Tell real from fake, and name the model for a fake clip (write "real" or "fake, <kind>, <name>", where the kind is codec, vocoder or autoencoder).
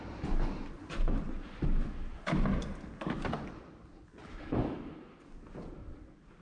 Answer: real